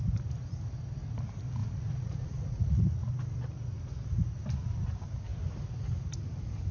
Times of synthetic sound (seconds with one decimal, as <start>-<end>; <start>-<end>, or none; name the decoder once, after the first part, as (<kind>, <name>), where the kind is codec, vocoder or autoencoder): 1.6-2.8 (vocoder, Vocos)